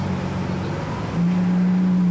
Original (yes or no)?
yes